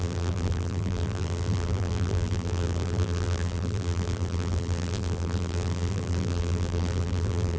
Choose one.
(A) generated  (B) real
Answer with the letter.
A